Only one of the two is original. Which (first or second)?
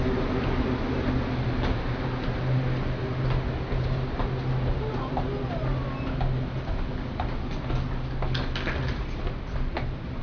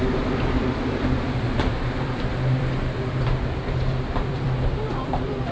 first